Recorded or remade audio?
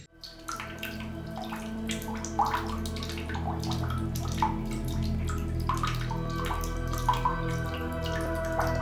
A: recorded